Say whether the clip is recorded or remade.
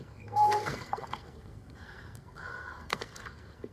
remade